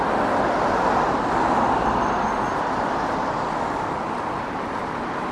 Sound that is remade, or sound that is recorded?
recorded